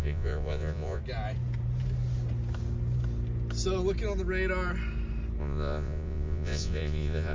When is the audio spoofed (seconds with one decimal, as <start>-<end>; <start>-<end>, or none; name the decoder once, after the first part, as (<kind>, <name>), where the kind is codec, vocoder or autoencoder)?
0.0-1.0 (vocoder, Vocos); 5.4-7.3